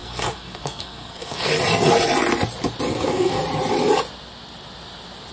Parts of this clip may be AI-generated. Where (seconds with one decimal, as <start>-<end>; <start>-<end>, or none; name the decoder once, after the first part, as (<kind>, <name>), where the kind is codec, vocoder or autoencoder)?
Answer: 0.0-1.5 (codec, SNAC); 2.9-3.4